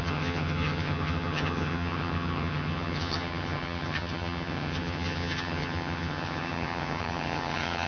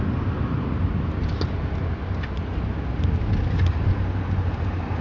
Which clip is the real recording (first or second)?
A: second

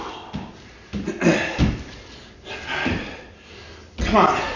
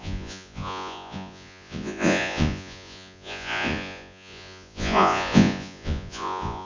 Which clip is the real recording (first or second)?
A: first